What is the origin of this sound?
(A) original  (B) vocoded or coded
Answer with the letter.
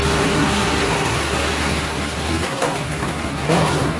B